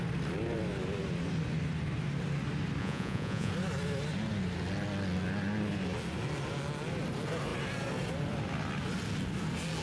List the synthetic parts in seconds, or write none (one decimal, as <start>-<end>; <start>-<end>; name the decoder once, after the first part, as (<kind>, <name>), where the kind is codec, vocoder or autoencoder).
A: 2.8-3.5 (vocoder, Vocos)